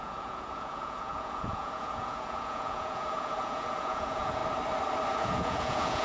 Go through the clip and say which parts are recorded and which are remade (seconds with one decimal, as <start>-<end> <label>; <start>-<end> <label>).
0.0-4.4 remade; 4.4-5.1 recorded; 5.1-6.0 remade